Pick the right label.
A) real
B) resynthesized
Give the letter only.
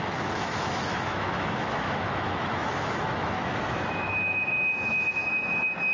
B